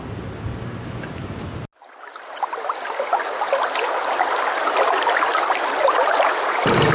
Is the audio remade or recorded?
recorded